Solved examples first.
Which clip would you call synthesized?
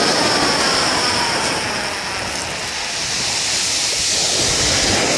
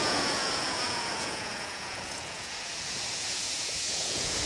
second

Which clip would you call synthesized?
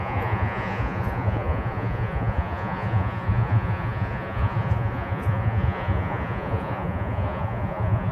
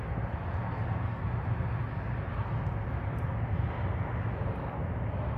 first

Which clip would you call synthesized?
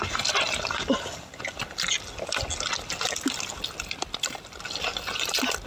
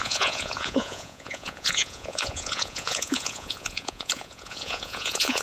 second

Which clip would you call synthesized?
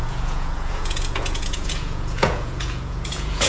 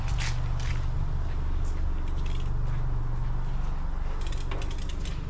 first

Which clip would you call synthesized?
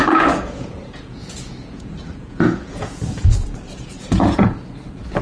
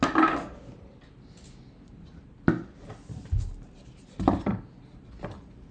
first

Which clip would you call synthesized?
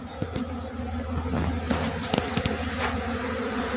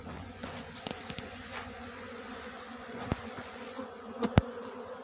second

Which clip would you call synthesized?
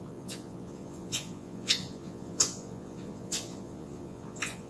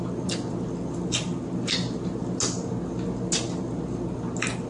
first